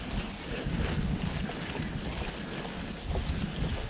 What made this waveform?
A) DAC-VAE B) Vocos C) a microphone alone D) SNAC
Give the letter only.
C